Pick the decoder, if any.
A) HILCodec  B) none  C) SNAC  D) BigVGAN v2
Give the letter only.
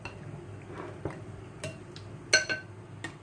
B